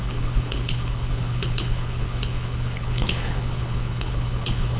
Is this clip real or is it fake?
fake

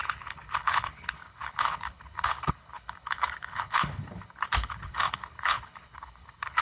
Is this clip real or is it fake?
fake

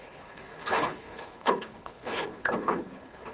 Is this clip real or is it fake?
fake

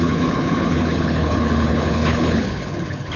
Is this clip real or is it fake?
fake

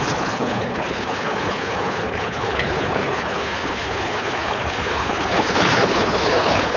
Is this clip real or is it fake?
fake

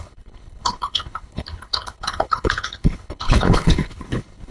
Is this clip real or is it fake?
fake